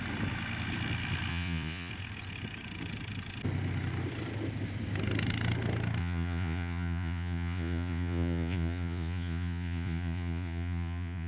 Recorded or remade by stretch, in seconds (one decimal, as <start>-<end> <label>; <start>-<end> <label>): 0.0-1.3 recorded; 1.3-1.9 remade; 1.9-6.0 recorded; 6.0-11.3 remade